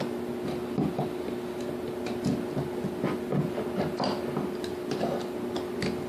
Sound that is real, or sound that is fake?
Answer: real